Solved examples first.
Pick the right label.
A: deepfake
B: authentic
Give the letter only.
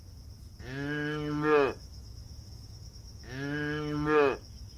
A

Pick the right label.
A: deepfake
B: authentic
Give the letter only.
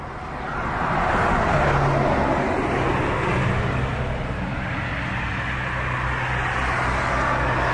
B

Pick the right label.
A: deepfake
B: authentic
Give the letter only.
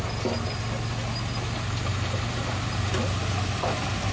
B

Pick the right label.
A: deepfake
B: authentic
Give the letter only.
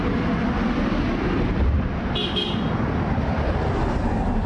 B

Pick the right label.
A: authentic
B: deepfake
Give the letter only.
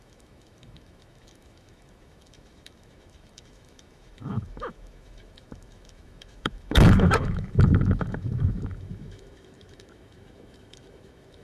B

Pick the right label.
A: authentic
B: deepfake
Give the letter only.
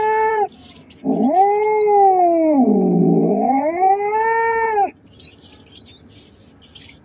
A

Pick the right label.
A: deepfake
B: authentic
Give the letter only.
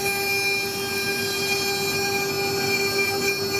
B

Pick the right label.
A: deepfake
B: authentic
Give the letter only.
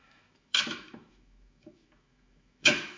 A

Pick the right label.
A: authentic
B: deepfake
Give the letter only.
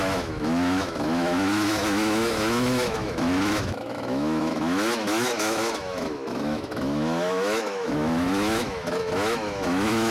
B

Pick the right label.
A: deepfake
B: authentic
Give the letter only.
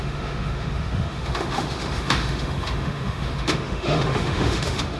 A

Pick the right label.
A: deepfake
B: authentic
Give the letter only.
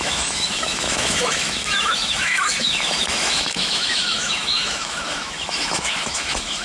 A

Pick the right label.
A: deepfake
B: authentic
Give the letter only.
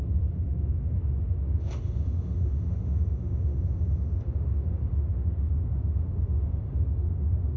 A